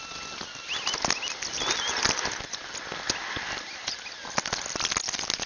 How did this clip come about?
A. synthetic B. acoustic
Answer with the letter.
B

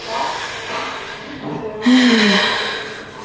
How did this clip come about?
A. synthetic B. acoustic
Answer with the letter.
B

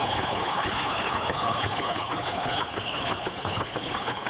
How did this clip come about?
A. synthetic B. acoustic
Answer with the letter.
A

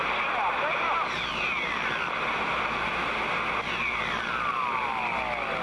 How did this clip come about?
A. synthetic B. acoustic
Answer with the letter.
B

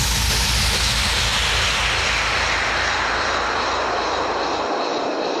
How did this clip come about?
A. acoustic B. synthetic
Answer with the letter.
A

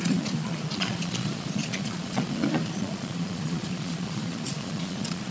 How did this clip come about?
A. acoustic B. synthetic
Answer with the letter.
B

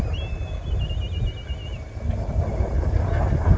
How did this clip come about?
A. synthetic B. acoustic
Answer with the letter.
B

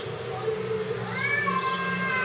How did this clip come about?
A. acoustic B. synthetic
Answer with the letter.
A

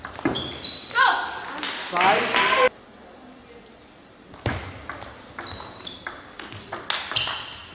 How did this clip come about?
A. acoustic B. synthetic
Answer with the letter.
A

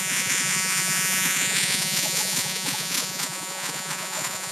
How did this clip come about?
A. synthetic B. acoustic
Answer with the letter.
A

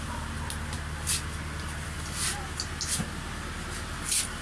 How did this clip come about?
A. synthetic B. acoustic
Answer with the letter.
B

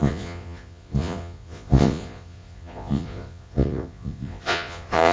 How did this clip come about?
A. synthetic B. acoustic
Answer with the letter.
A